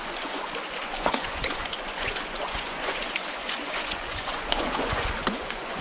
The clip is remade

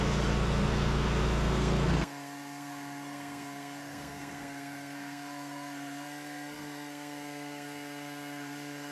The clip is remade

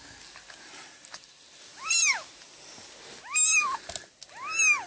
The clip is recorded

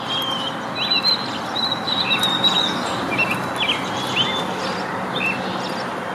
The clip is recorded